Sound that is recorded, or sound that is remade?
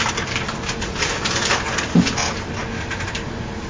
recorded